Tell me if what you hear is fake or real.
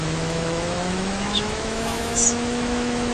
fake